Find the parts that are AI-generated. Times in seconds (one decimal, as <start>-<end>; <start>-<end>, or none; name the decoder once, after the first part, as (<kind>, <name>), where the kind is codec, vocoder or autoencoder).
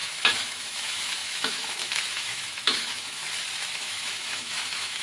0.0-3.2 (autoencoder, DAC-VAE); 3.7-5.0